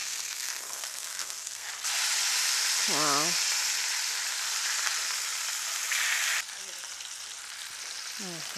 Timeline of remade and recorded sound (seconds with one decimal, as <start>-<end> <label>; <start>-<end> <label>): 0.0-1.7 remade; 1.7-8.6 recorded